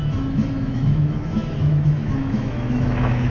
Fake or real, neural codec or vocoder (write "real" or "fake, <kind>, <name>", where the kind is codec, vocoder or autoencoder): fake, autoencoder, DAC-VAE